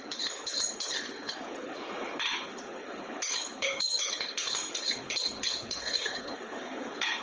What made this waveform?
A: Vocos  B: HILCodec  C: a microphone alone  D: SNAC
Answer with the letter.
B